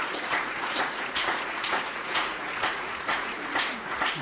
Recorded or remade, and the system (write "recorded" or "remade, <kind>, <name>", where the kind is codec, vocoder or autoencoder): remade, vocoder, Vocos